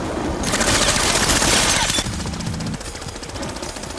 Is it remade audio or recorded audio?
recorded